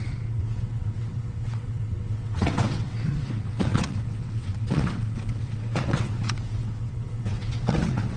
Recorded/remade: remade